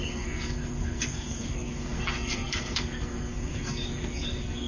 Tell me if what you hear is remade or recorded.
remade